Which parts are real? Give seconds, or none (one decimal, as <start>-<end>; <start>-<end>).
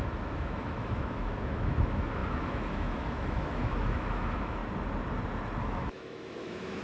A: 4.6-5.6